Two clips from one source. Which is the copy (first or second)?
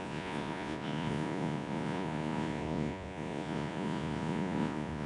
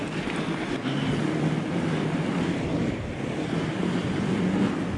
first